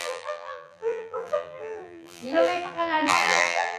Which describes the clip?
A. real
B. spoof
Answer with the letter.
B